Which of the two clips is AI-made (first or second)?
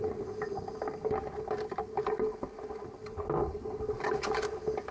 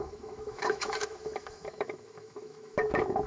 second